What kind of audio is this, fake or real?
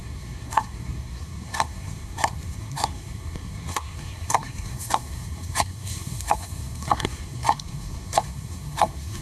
fake